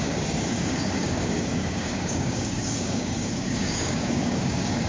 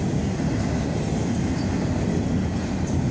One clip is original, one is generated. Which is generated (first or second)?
first